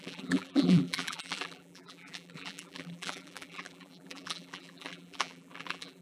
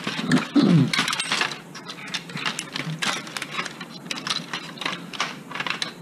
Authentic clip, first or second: second